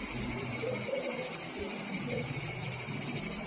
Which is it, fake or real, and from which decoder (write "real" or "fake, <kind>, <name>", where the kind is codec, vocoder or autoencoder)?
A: real